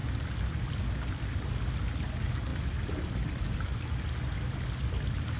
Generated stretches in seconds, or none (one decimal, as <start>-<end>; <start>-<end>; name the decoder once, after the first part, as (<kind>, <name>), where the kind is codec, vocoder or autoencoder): 0.0-1.5 (vocoder, BigVGAN v2); 2.5-3.1